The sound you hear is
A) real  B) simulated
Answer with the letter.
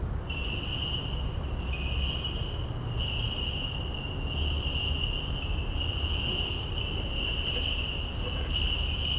A